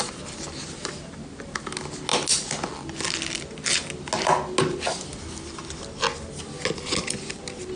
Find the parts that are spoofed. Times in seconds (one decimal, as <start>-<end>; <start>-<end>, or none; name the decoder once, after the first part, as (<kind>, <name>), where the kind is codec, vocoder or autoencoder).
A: none